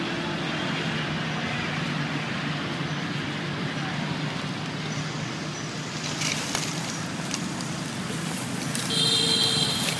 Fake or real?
real